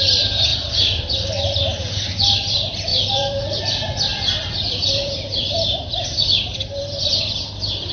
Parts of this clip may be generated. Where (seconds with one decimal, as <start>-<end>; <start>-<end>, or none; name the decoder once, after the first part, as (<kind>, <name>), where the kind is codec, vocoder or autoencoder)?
0.5-1.3 (vocoder, BigVGAN v2); 2.9-3.6; 4.1-6.8